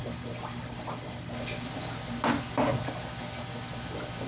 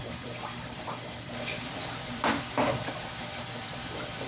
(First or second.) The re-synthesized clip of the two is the second